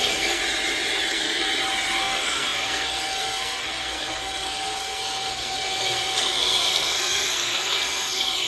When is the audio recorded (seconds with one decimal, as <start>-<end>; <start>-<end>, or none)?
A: 0.4-1.1; 1.5-2.0